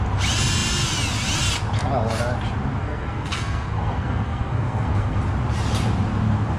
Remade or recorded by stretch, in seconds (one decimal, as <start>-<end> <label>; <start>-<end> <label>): 0.0-2.8 recorded; 2.8-5.2 remade; 5.2-6.6 recorded